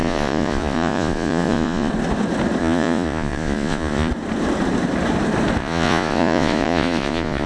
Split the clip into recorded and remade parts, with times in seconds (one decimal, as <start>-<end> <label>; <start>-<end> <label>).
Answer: 0.0-1.9 remade; 1.9-2.6 recorded; 2.6-4.1 remade; 4.1-5.6 recorded; 5.6-7.5 remade